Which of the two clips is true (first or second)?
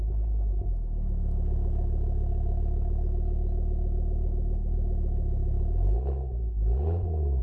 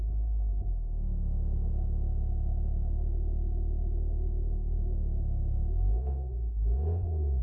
first